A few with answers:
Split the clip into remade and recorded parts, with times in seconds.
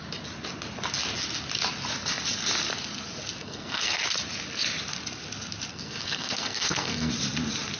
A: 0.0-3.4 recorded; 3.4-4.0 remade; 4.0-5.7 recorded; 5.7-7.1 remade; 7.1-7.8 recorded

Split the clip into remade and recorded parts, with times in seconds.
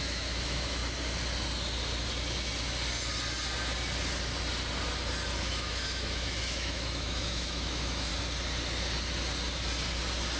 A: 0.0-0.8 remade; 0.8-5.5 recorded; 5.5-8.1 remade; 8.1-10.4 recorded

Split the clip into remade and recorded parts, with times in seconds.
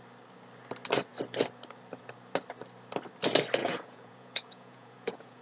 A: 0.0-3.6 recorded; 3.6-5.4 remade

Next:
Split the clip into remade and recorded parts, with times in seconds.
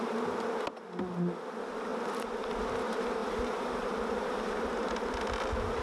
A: 0.0-3.2 recorded; 3.2-4.6 remade; 4.6-5.8 recorded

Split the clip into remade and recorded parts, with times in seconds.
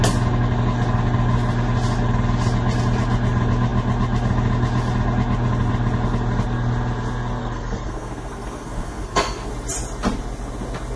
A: 0.0-7.4 recorded; 7.4-9.5 remade; 9.5-11.0 recorded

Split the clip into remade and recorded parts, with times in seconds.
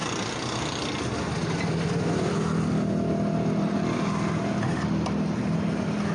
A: 0.0-6.1 recorded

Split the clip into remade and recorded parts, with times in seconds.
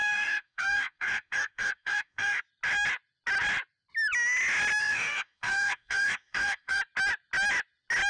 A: 0.0-2.4 remade; 2.4-4.8 recorded; 4.8-6.8 remade; 6.8-8.1 recorded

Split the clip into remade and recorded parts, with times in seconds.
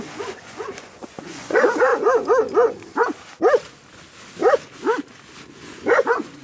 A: 0.0-1.9 remade; 1.9-5.7 recorded; 5.7-6.4 remade